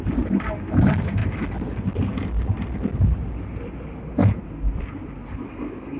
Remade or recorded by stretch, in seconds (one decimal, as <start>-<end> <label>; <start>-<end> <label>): 0.0-6.0 recorded